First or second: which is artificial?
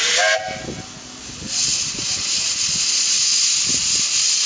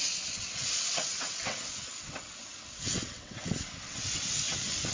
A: second